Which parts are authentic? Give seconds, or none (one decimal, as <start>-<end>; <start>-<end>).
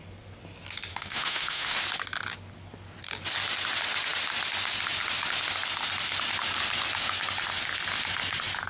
0.0-0.9; 1.8-8.7